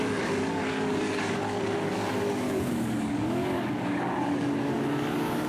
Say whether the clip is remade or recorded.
remade